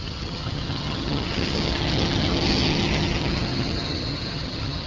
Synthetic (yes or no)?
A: yes